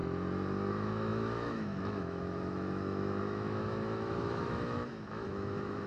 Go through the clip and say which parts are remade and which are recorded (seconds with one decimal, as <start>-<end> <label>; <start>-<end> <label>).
0.0-0.7 recorded; 0.7-5.9 remade